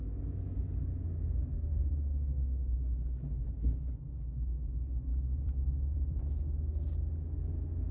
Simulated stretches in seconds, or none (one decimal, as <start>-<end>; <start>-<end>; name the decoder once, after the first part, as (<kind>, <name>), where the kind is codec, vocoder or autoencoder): 5.1-6.2 (vocoder, BigVGAN v2)